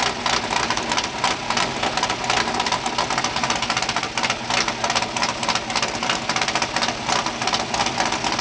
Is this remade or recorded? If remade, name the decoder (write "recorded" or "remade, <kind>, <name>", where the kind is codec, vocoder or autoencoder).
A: recorded